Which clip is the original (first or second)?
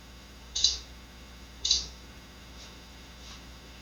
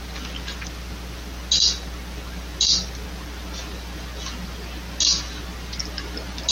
second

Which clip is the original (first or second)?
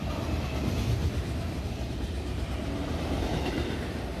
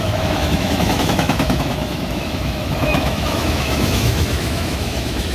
first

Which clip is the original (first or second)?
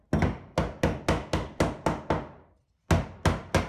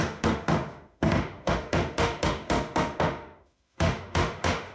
first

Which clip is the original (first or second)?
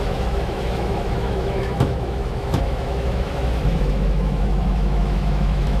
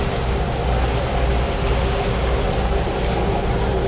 second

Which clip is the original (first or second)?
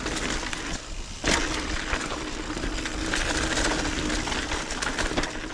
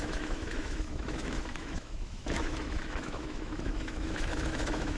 first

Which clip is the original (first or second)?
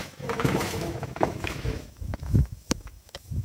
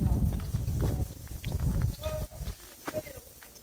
second